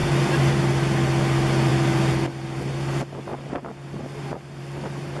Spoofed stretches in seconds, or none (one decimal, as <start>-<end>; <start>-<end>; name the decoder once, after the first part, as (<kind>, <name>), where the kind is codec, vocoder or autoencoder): none